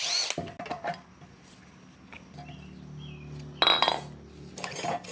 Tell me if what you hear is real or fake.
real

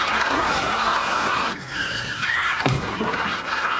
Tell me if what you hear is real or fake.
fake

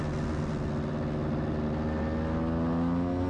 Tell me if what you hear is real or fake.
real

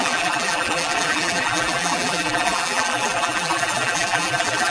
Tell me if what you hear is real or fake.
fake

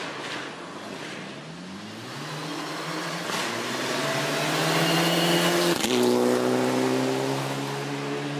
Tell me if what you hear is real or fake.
real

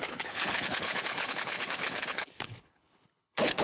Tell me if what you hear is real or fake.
fake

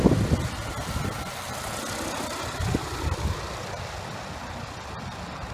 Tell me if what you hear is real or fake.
real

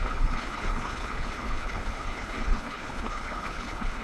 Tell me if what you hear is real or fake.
fake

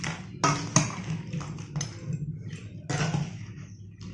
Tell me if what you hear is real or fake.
real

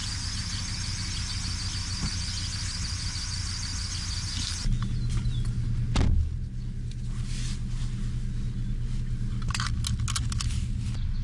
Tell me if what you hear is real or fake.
real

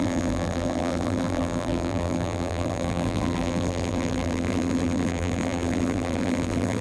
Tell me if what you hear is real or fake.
fake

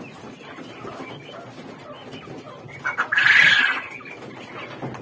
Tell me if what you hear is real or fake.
real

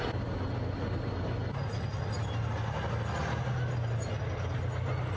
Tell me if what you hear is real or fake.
real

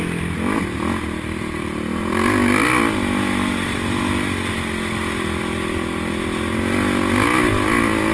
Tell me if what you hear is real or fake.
real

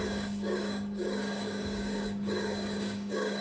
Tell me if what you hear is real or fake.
fake